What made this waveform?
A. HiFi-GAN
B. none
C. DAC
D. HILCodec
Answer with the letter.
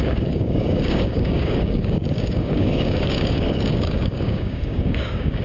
C